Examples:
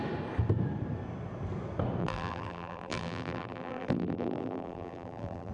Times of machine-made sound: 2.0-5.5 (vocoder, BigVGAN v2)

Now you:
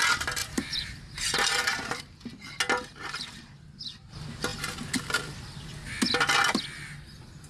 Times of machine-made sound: 0.4-2.0 (vocoder, BigVGAN v2); 2.9-3.4

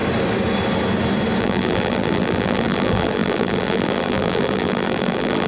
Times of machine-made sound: 1.4-5.5 (vocoder, BigVGAN v2)

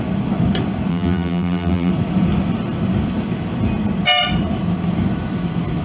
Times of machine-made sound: 0.9-1.9 (vocoder, BigVGAN v2)